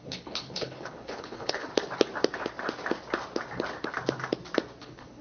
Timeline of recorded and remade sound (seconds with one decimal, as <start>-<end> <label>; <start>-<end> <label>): 0.0-1.7 remade; 1.7-4.8 recorded; 4.8-5.2 remade